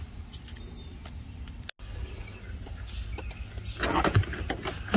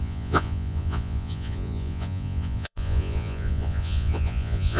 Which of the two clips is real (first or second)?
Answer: first